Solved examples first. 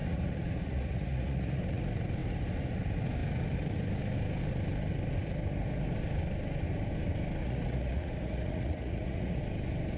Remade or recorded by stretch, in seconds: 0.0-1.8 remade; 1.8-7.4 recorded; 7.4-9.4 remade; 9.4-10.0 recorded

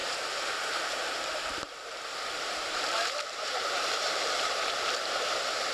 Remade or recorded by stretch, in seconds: 0.0-5.7 remade

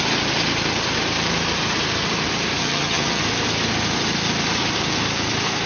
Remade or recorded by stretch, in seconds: 0.0-2.6 recorded; 2.6-3.2 remade; 3.2-5.7 recorded

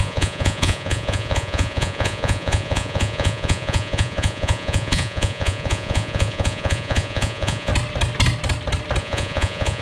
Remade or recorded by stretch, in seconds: 0.0-7.7 remade; 7.7-9.0 recorded; 9.0-9.8 remade

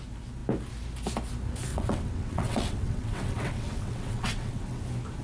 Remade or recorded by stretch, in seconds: 0.0-1.7 recorded; 1.7-4.8 remade; 4.8-5.2 recorded

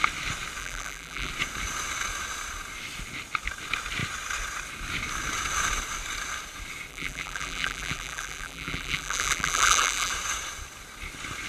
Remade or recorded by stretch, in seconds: 0.0-0.6 recorded; 0.6-1.3 remade; 1.3-6.9 recorded; 6.9-10.1 remade; 10.1-11.5 recorded

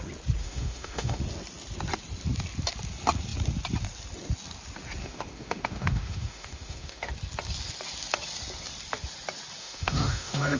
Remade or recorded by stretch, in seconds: 0.0-0.4 recorded; 0.4-1.2 remade; 1.2-5.0 recorded; 5.0-7.1 remade; 7.1-9.6 recorded; 9.6-10.6 remade

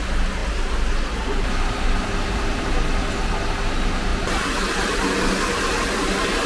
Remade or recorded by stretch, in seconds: 0.0-6.5 recorded